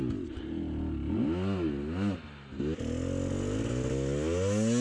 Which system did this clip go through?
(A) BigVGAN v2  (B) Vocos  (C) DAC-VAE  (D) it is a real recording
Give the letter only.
D